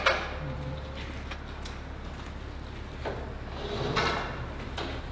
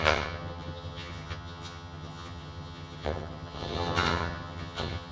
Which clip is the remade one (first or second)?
second